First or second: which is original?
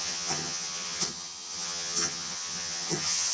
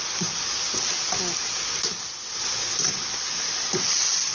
second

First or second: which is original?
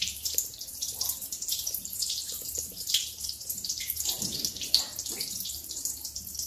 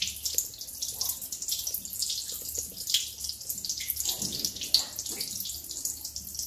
second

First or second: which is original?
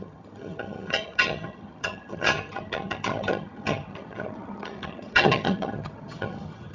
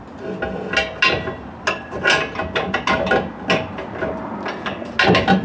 second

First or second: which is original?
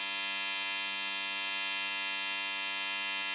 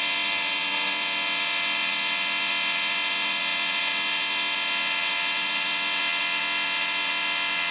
first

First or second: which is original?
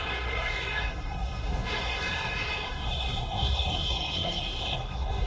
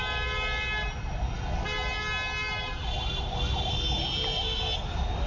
second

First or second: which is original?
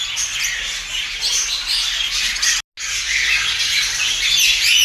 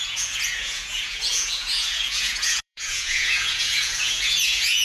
first